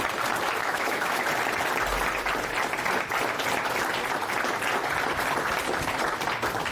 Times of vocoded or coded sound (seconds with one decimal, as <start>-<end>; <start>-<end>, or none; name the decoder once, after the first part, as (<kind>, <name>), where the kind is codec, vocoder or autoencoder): 0.6-1.2 (autoencoder, DAC-VAE)